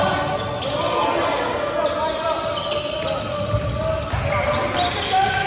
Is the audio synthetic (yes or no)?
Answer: no